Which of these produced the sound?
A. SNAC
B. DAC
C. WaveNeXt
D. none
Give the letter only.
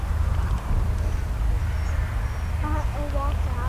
D